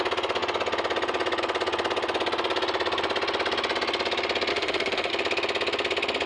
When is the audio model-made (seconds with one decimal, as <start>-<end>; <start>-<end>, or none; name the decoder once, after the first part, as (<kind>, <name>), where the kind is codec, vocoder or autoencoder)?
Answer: 4.5-5.1 (autoencoder, DAC-VAE)